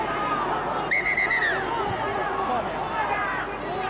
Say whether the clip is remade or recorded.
recorded